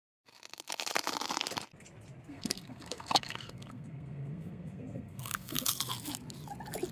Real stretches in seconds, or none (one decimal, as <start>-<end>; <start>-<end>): 0.0-2.3; 5.7-6.9

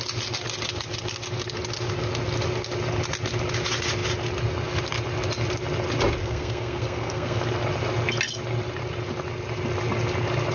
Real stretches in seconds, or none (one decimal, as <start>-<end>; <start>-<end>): 0.0-6.2; 7.4-10.5

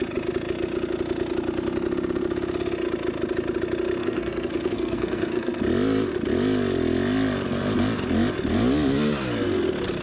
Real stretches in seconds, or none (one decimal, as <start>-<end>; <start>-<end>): 0.0-4.0; 5.6-10.0

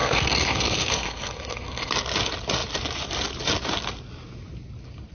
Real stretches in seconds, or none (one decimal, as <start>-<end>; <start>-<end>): 1.9-5.1

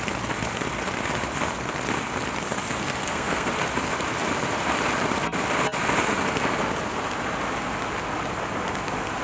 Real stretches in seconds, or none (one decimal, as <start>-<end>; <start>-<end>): 0.0-3.0; 3.5-9.2